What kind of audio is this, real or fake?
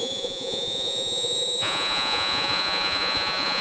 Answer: fake